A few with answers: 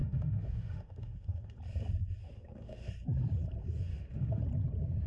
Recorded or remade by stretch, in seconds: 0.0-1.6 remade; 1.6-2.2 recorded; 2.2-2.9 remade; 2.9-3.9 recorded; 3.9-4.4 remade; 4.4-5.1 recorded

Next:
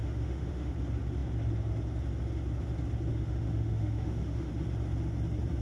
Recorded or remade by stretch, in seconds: 0.0-0.7 remade; 0.7-3.1 recorded; 3.1-4.5 remade; 4.5-5.6 recorded

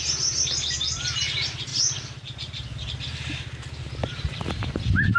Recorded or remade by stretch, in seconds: 0.0-1.7 recorded; 1.7-4.8 remade; 4.8-5.2 recorded